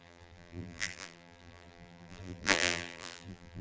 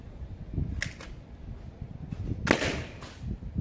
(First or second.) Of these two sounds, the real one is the second